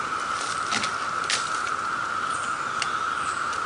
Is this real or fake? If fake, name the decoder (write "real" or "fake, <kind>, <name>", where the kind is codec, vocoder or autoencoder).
real